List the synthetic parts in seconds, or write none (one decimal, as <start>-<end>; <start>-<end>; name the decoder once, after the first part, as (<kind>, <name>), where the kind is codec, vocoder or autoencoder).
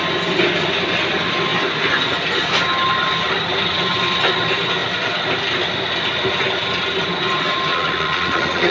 7.7-8.7 (vocoder, Vocos)